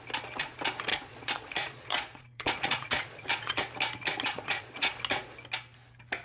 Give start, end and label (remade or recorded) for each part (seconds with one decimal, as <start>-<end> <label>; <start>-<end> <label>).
0.0-0.9 recorded; 0.9-3.6 remade; 3.6-4.1 recorded; 4.1-4.9 remade; 4.9-6.2 recorded

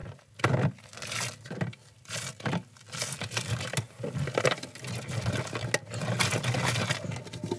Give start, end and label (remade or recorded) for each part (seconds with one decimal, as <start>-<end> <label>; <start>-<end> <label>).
0.0-7.6 recorded

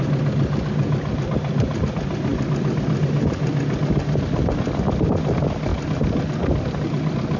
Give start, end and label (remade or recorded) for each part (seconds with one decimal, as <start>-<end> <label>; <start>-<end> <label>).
0.0-7.4 recorded

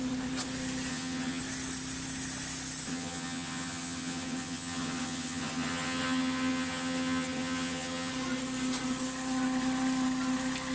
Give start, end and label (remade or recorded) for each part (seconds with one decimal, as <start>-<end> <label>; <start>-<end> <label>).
0.0-0.9 recorded; 0.9-1.4 remade; 1.4-2.9 recorded; 2.9-8.1 remade; 8.1-10.7 recorded

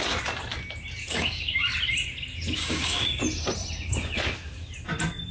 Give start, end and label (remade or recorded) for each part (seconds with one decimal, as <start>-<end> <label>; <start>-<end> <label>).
0.0-1.0 recorded; 1.0-1.7 remade; 1.7-2.6 recorded; 2.6-3.2 remade; 3.2-5.3 recorded

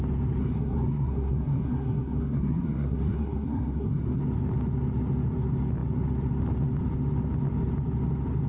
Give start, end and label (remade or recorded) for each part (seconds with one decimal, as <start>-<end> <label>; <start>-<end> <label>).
0.0-0.4 recorded; 0.4-4.2 remade; 4.2-8.5 recorded